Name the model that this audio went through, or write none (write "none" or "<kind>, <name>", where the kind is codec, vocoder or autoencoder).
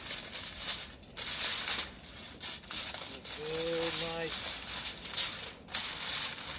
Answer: none